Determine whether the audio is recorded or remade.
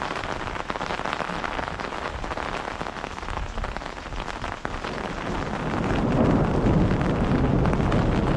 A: recorded